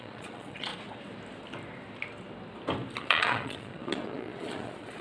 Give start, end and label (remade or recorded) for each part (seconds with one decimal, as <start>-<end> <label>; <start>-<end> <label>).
0.0-0.7 remade; 0.7-3.0 recorded; 3.0-5.0 remade